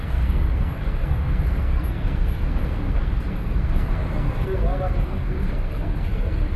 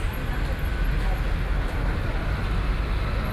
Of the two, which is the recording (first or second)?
second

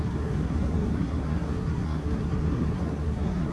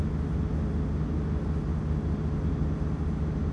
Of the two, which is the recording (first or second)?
second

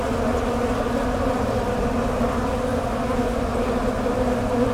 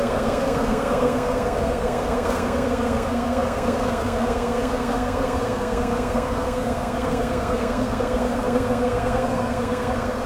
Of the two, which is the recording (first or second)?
first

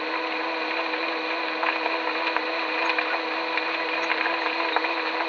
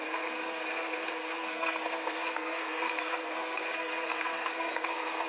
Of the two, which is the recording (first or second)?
first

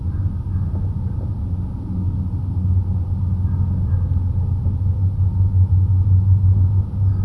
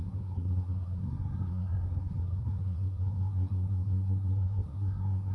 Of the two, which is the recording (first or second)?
first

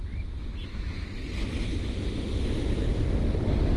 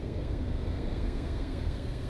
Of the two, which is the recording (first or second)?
first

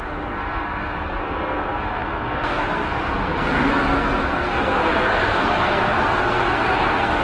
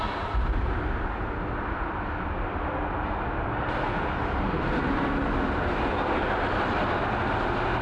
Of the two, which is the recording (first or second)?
second